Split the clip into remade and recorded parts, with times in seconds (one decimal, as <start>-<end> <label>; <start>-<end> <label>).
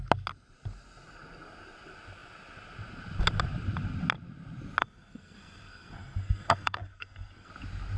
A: 0.0-4.8 recorded; 4.8-7.5 remade; 7.5-8.0 recorded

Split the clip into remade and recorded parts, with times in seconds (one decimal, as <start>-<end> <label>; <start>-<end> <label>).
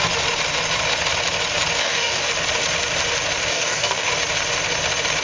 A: 0.0-1.8 recorded; 1.8-2.3 remade; 2.3-3.5 recorded; 3.5-4.1 remade; 4.1-5.2 recorded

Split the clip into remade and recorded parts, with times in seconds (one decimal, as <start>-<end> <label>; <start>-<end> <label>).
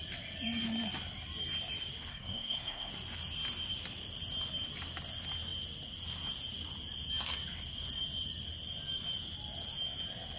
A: 0.0-2.1 recorded; 2.1-2.9 remade; 2.9-10.4 recorded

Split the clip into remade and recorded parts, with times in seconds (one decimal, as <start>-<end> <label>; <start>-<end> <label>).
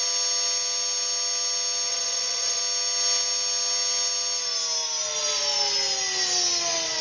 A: 0.0-1.9 recorded; 1.9-2.6 remade; 2.6-7.0 recorded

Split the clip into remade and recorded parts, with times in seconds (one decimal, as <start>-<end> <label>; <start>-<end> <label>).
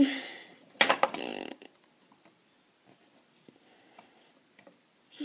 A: 0.0-5.2 recorded